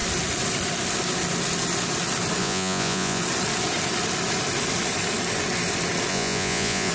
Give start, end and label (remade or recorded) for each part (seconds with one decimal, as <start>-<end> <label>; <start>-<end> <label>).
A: 0.0-2.4 recorded; 2.4-3.2 remade; 3.2-6.1 recorded; 6.1-6.9 remade